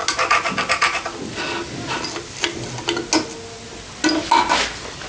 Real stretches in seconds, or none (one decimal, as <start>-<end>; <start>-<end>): 0.0-5.1